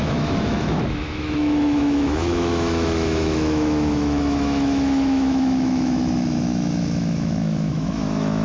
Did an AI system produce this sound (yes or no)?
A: yes